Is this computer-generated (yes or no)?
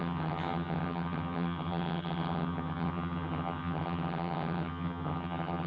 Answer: yes